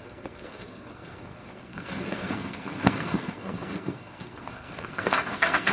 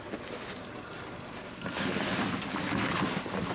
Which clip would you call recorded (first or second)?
second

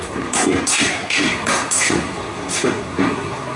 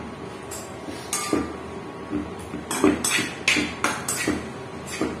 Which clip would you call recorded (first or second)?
second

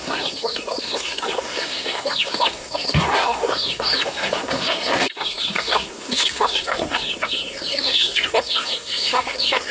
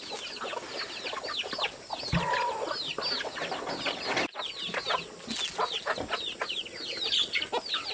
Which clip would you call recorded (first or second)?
second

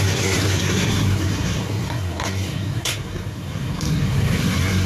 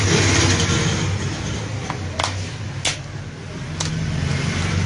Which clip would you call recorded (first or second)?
second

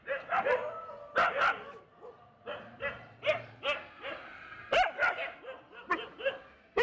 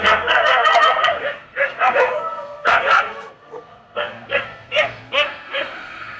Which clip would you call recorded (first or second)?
first